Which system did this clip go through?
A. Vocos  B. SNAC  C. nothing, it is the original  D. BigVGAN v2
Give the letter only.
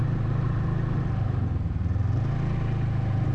C